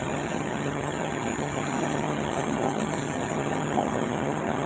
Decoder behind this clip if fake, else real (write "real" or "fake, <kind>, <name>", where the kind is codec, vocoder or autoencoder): fake, vocoder, HiFi-GAN